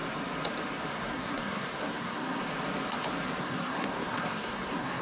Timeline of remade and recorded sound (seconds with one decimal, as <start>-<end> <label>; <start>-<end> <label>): 0.0-0.9 recorded; 0.9-2.4 remade; 2.4-3.4 recorded; 3.4-5.0 remade